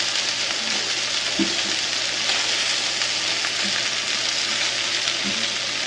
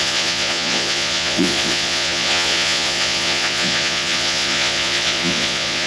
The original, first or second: first